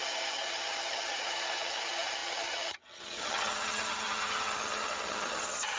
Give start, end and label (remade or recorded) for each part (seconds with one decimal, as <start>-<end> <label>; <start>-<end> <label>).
0.0-5.8 remade